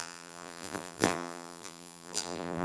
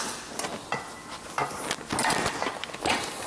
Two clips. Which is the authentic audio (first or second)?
second